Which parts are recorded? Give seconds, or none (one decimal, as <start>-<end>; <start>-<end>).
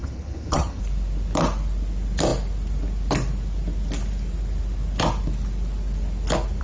0.8-6.6